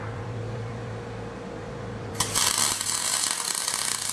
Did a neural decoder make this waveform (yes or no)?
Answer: yes